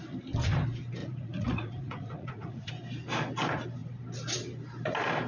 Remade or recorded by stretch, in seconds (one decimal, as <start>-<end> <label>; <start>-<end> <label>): 0.0-1.0 recorded; 1.0-2.7 remade; 2.7-5.3 recorded